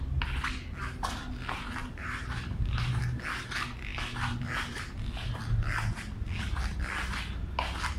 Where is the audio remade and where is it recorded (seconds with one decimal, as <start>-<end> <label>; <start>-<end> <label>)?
0.0-1.8 recorded; 1.8-3.0 remade; 3.0-8.0 recorded